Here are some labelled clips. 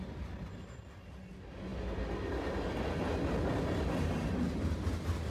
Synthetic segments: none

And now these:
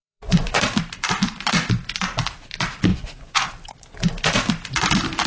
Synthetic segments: 0.0-0.6 (vocoder, Vocos); 2.9-3.5

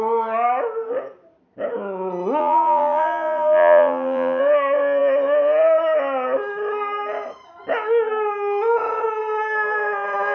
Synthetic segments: 2.4-4.4 (vocoder, BigVGAN v2)

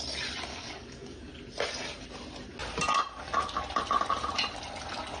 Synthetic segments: 0.5-1.3 (codec, DAC)

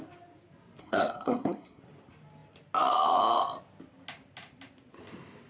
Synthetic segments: 0.8-1.8 (codec, SNAC)

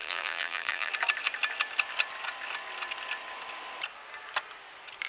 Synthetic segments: 0.0-0.9 (vocoder, BigVGAN v2)

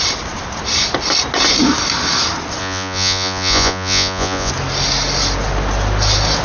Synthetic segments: 2.6-4.5 (vocoder, Vocos)

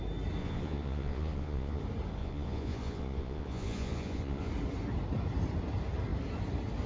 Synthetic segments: 0.4-1.8 (vocoder, Vocos); 2.2-4.5